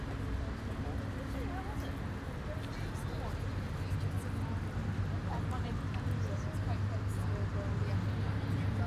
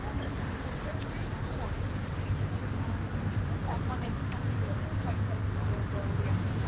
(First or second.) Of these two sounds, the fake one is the second